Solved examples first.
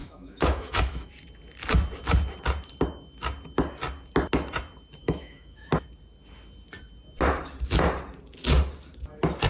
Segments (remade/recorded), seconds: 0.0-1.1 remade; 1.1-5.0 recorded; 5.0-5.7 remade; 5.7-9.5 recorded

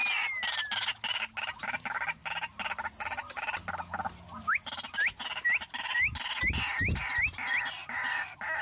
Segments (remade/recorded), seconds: 0.0-8.6 recorded